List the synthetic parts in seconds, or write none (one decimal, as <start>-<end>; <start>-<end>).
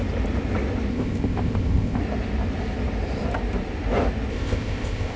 0.9-2.0; 4.3-5.2